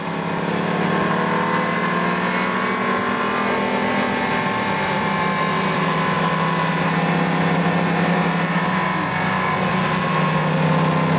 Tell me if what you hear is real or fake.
real